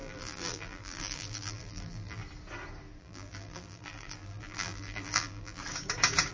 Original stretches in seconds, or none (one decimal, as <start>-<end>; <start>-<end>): 2.2-3.0; 5.6-6.3